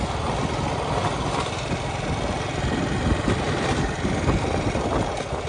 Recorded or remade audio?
recorded